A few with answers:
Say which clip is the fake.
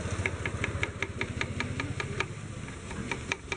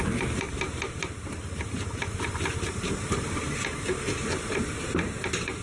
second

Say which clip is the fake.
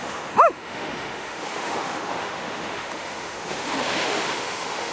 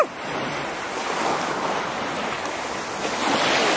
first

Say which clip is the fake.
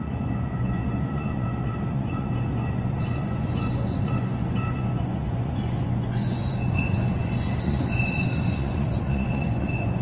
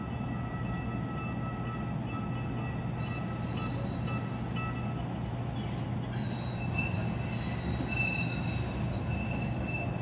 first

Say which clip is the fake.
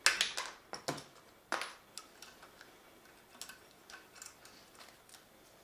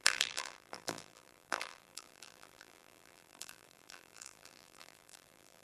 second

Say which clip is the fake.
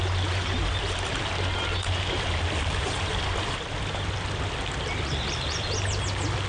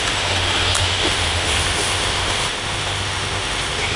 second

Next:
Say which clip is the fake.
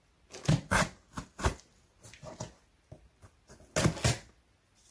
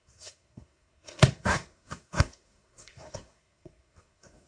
second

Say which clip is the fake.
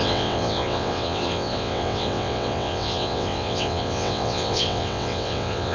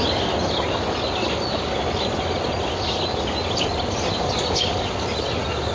first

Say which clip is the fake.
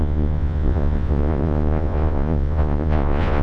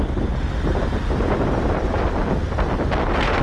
first